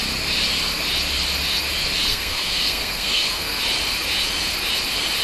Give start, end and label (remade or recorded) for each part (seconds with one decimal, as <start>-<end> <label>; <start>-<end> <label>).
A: 0.0-2.1 recorded; 2.1-3.6 remade; 3.6-5.2 recorded